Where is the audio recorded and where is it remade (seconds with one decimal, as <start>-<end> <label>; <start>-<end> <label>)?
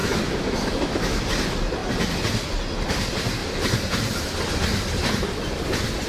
0.0-1.2 remade; 1.2-6.1 recorded